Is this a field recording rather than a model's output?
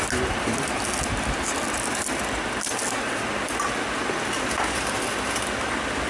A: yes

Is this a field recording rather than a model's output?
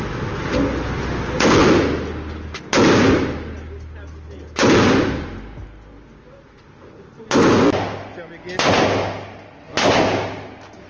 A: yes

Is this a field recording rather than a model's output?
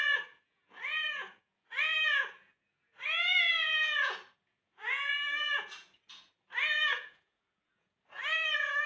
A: no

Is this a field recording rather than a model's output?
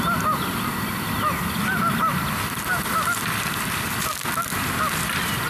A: yes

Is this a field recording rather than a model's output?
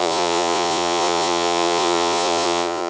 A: no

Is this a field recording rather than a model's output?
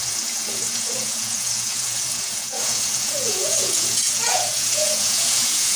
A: no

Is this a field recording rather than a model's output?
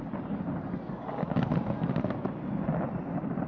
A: yes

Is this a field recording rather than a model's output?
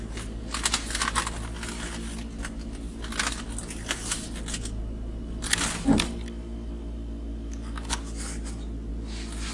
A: yes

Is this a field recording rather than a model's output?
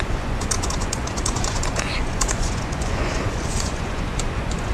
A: no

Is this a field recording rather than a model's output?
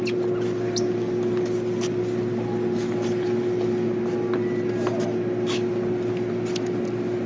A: yes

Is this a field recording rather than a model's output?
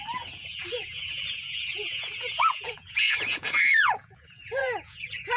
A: no